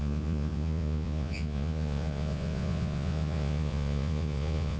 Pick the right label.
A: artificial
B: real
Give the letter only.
A